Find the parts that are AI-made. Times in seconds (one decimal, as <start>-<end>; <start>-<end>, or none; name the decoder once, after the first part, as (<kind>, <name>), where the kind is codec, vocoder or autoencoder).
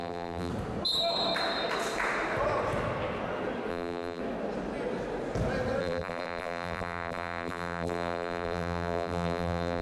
0.0-0.5 (vocoder, BigVGAN v2); 3.7-4.2; 5.8-9.8